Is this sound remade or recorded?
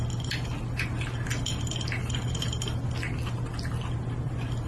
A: recorded